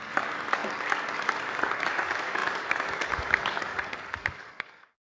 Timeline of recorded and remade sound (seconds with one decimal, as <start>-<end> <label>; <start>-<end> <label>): 0.0-5.1 remade